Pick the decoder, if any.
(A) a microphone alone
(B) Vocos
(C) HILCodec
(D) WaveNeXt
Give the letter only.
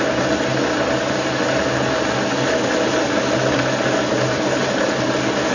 A